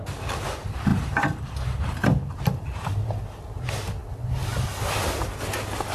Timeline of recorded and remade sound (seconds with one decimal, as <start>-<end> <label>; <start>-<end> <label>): 0.0-5.9 recorded